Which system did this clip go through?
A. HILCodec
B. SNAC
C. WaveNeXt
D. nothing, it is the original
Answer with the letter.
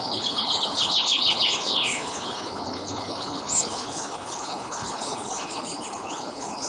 A